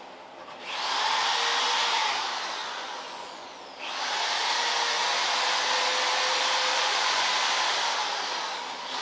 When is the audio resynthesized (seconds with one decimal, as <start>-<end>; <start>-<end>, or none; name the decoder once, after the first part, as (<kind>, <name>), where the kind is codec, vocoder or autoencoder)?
2.6-3.6 (vocoder, Vocos); 6.7-7.3